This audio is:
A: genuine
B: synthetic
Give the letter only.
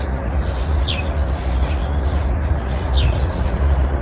B